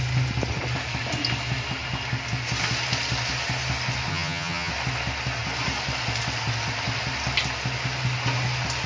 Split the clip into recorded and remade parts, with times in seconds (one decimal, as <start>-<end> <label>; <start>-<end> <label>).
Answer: 0.0-4.1 recorded; 4.1-4.7 remade; 4.7-8.9 recorded

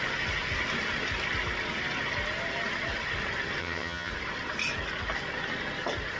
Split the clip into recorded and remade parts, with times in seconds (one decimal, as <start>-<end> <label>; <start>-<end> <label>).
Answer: 0.0-3.6 recorded; 3.6-4.1 remade; 4.1-6.2 recorded

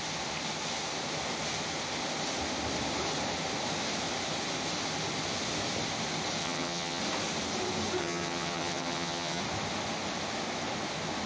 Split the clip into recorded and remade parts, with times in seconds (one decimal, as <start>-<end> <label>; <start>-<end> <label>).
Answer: 0.0-6.4 recorded; 6.4-7.0 remade; 7.0-8.0 recorded; 8.0-9.4 remade; 9.4-11.3 recorded

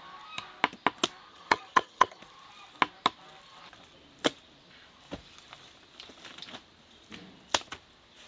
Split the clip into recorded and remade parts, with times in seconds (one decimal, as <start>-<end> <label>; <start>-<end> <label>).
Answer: 0.0-1.3 recorded; 1.3-2.2 remade; 2.2-8.3 recorded